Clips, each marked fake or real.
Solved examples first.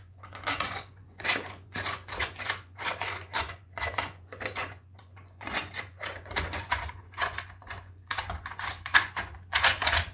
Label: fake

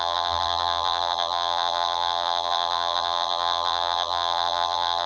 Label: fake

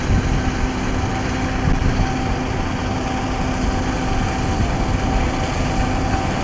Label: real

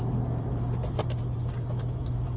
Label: real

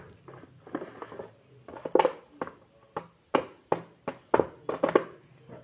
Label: real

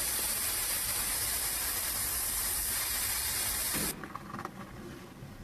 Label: real